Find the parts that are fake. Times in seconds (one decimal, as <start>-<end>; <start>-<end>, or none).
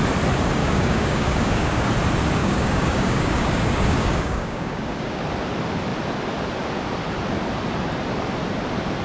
0.6-1.9; 2.4-5.2